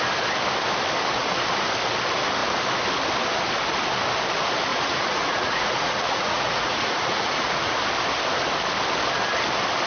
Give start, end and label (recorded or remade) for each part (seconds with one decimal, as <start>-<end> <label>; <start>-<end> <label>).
0.0-4.7 recorded; 4.7-7.8 remade; 7.8-9.9 recorded